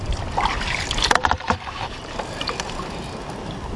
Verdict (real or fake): real